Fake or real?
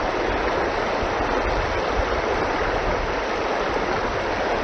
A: real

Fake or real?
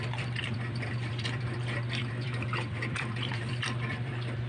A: fake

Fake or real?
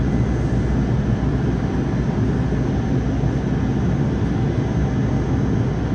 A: real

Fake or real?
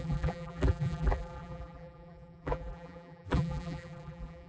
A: fake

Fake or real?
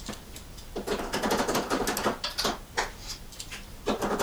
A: real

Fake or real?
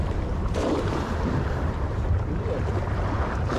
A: fake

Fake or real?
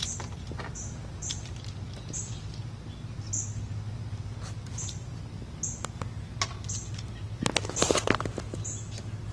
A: real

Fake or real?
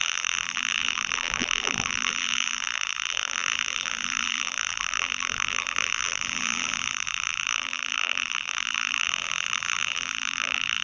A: fake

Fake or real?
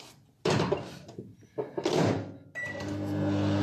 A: real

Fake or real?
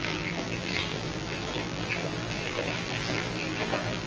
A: fake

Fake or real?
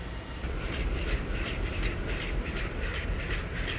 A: fake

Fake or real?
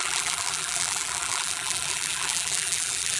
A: fake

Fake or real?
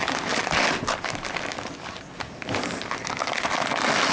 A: real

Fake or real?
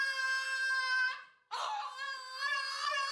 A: fake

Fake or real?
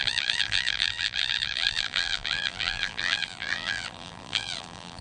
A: fake